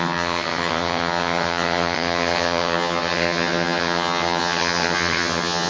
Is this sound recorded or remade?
remade